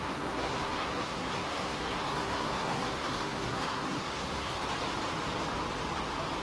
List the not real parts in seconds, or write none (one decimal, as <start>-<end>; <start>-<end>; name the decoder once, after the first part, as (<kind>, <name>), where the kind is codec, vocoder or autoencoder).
0.0-4.6 (codec, SNAC)